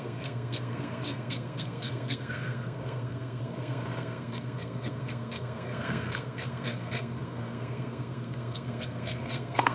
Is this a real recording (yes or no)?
no